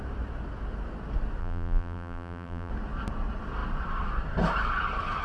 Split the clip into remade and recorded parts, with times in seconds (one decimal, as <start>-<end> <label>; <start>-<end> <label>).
0.0-1.4 recorded; 1.4-2.7 remade; 2.7-5.2 recorded